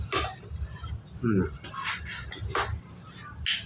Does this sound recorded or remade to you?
recorded